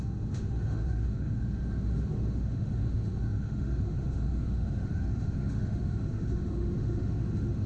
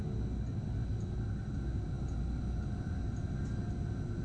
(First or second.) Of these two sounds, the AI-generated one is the first